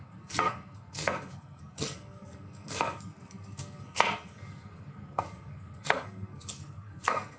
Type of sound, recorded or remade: remade